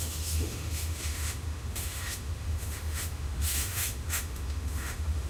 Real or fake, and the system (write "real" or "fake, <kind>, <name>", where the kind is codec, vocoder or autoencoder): fake, autoencoder, DAC-VAE